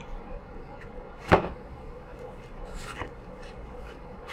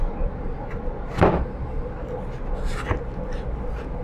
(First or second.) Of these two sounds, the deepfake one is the first